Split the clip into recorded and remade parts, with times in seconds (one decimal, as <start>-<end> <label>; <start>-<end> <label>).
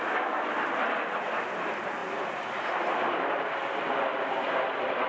0.0-5.1 recorded